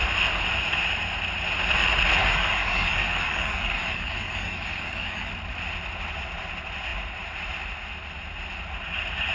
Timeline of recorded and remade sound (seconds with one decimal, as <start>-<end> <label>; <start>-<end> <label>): 0.0-2.2 recorded; 2.2-5.3 remade; 5.3-9.3 recorded